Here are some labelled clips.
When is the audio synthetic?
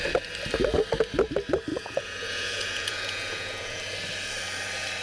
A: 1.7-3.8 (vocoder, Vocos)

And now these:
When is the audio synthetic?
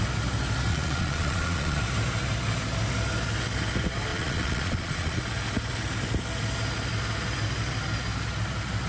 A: 0.7-1.8 (vocoder, Vocos); 4.1-5.2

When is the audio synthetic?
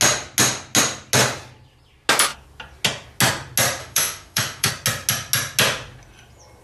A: 3.8-4.7 (autoencoder, DAC-VAE)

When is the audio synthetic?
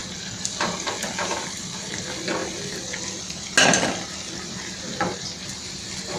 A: none